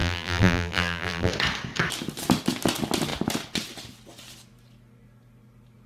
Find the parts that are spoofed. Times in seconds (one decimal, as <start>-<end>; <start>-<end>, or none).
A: 0.0-1.3